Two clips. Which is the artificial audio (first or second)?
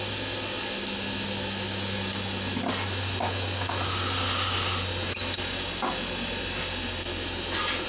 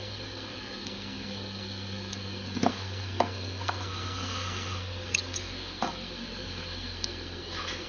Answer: second